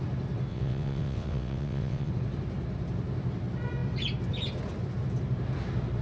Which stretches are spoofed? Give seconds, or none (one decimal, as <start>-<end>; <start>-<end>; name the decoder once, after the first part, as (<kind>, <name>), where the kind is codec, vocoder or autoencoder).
0.5-2.1 (vocoder, WaveNeXt)